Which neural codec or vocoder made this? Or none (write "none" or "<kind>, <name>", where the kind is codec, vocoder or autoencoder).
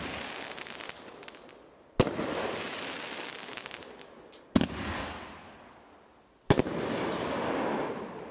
none